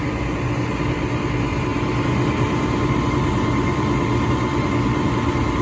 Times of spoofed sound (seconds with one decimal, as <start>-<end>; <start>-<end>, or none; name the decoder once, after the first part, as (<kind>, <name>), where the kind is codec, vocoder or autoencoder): 0.0-5.6 (vocoder, BigVGAN v2)